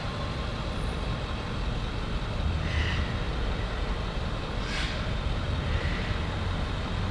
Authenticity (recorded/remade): remade